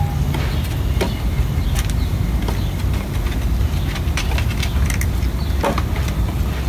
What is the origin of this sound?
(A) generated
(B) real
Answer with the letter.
B